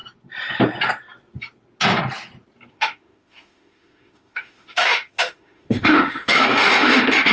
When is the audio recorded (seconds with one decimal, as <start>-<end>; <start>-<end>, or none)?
0.0-2.7